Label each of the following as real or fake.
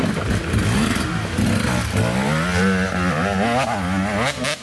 real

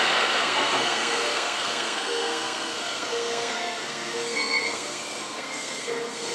fake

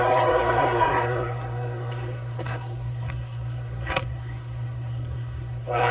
fake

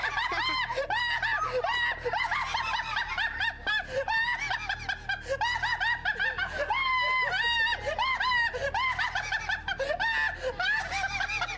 real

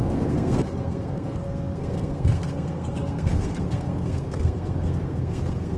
fake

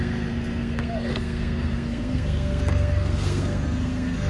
fake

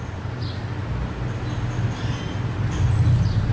real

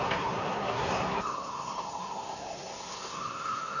fake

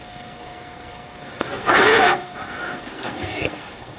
fake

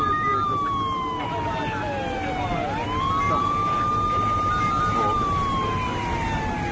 real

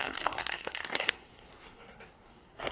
fake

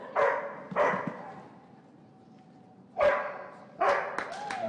real